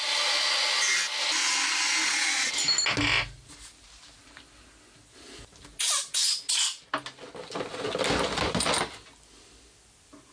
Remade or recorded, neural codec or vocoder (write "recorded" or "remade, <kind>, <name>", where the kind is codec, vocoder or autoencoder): recorded